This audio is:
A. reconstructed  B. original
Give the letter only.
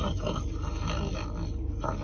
B